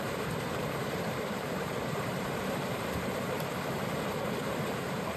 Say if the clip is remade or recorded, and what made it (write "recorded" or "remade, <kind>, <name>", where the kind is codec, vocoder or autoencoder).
remade, vocoder, BigVGAN v2